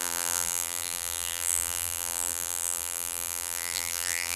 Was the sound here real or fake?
fake